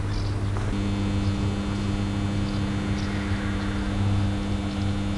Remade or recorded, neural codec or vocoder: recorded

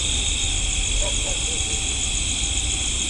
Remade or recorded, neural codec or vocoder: recorded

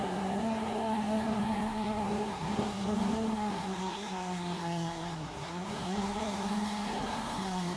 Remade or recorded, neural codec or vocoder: remade, codec, SNAC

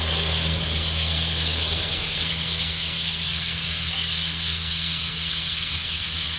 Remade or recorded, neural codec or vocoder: remade, codec, SNAC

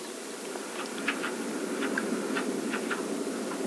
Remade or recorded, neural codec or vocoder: recorded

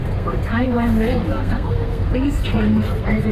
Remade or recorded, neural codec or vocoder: remade, codec, SNAC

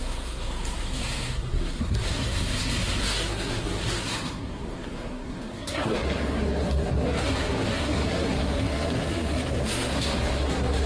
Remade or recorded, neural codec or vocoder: remade, codec, SNAC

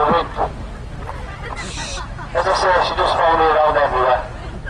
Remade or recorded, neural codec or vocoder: recorded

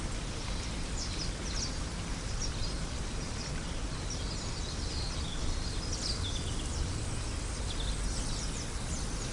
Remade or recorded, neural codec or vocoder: recorded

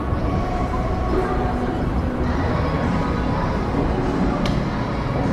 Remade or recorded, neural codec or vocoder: recorded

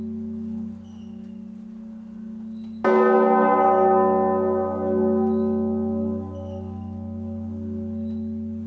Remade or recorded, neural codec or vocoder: recorded